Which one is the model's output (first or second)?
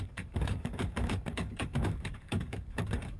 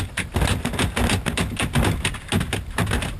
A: first